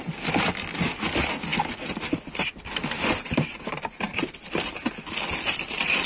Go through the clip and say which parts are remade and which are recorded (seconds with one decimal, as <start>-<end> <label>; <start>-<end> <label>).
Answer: 0.0-6.1 recorded